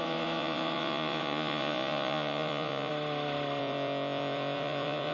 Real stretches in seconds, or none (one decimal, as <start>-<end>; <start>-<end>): 2.9-3.6